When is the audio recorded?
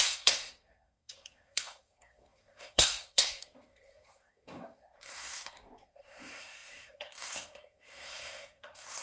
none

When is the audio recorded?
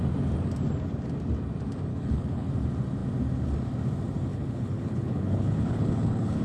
0.0-1.9; 2.5-4.3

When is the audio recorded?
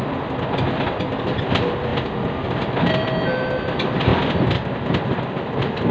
0.0-5.9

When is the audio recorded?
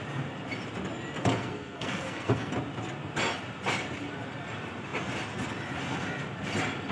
0.0-1.2; 2.5-6.9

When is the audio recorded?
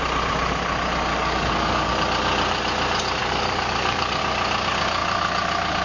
0.0-1.1; 1.9-3.2; 4.2-5.8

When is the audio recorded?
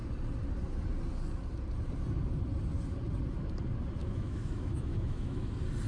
0.0-4.0; 5.5-5.9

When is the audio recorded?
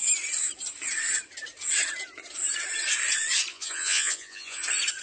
0.0-3.5; 4.6-5.0